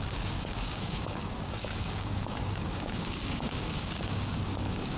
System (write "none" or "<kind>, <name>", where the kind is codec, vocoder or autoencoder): codec, DAC